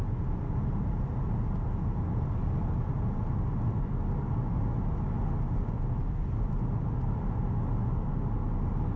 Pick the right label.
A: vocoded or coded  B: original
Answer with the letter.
B